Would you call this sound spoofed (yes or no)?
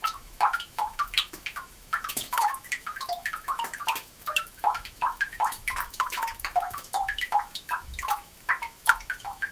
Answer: yes